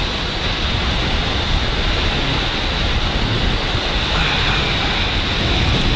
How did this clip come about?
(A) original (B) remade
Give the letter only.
A